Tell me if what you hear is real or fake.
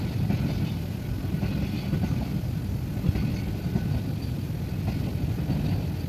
real